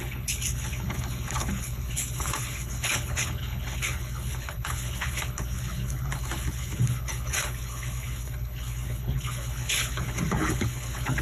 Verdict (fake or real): fake